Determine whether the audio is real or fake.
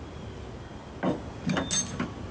real